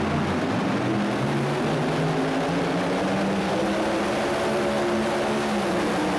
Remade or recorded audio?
recorded